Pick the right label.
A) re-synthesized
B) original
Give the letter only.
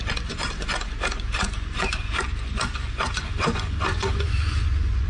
A